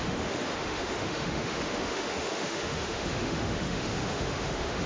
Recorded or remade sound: remade